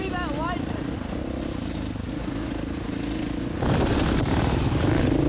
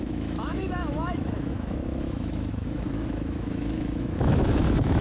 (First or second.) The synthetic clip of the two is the second